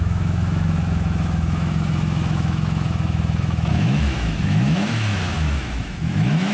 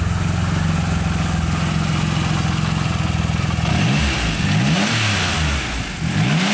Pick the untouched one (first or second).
second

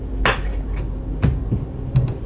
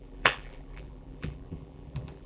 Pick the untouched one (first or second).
first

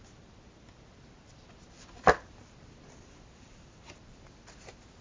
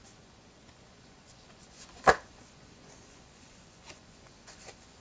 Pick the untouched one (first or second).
first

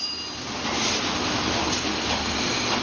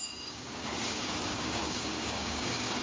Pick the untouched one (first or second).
first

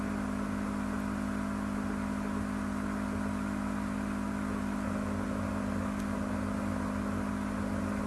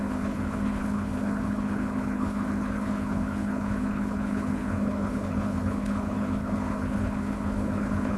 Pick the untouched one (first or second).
first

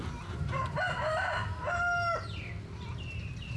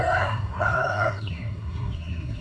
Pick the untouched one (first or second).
first